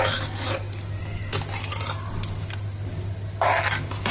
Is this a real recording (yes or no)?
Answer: yes